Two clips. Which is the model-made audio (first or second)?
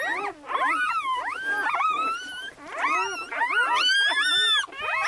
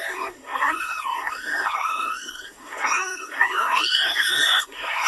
second